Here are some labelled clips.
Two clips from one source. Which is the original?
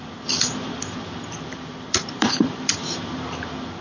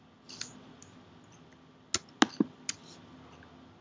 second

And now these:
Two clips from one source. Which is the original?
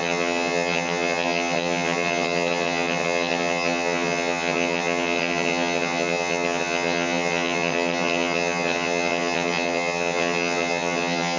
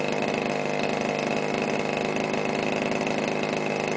second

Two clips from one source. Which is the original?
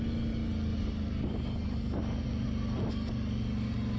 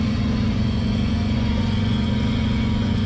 first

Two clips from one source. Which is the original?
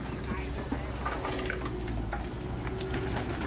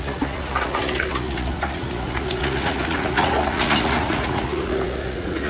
first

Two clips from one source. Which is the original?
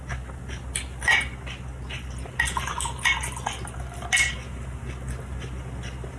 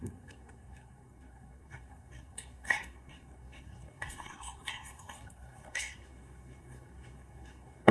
first